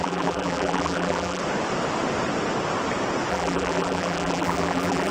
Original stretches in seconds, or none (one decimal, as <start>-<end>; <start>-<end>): 1.4-3.3